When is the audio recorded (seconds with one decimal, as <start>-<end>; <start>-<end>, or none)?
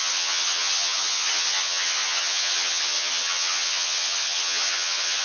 none